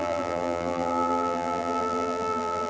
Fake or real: fake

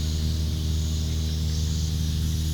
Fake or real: real